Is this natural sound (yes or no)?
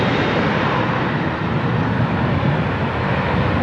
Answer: yes